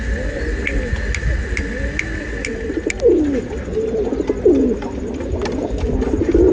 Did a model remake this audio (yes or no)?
no